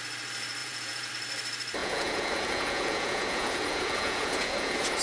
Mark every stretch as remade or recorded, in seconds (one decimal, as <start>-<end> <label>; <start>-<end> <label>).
0.0-0.6 recorded; 0.6-1.1 remade; 1.1-1.8 recorded; 1.8-5.0 remade